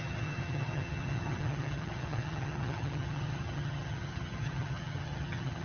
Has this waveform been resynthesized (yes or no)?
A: yes